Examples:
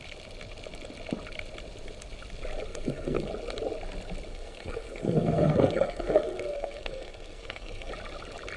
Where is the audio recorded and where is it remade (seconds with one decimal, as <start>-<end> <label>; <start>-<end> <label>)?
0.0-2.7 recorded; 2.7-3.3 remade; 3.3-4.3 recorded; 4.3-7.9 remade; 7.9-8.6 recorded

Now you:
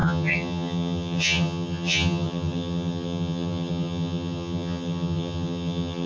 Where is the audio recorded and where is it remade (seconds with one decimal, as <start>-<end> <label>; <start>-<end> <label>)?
0.0-6.1 remade

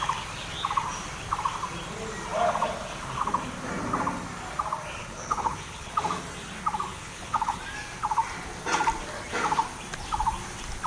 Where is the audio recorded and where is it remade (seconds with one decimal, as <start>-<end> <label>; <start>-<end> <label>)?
0.0-5.0 recorded; 5.0-5.9 remade; 5.9-6.9 recorded; 6.9-7.6 remade; 7.6-10.9 recorded

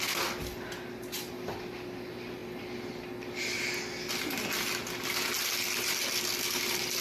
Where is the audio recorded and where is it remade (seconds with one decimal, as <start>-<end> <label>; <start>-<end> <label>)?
0.0-7.0 recorded

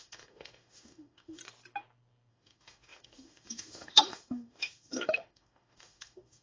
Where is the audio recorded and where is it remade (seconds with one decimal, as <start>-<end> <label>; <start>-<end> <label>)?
0.0-1.4 remade; 1.4-2.3 recorded; 2.3-6.4 remade

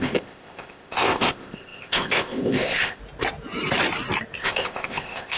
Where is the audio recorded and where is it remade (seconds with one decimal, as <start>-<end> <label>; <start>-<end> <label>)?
0.0-3.0 remade; 3.0-4.4 recorded; 4.4-5.4 remade